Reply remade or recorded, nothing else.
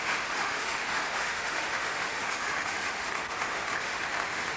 remade